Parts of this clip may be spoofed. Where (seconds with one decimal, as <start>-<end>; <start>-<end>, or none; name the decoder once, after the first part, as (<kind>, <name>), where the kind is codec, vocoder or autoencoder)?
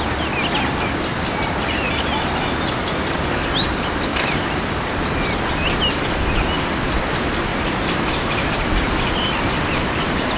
1.1-2.0 (vocoder, BigVGAN v2); 4.1-5.0; 7.5-8.5